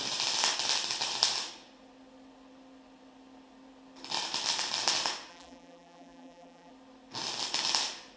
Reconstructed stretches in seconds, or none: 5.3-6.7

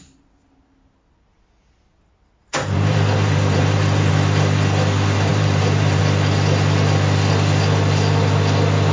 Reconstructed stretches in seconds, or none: 2.4-4.1; 5.3-6.0

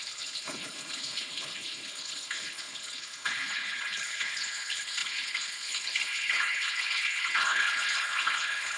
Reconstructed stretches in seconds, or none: 0.0-8.8